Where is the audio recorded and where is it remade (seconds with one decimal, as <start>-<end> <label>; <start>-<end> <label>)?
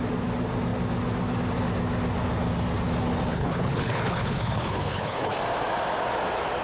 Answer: 0.0-3.3 recorded; 3.3-5.4 remade; 5.4-6.6 recorded